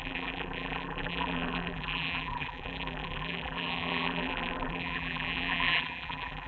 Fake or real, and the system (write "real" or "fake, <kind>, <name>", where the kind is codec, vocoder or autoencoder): fake, vocoder, BigVGAN v2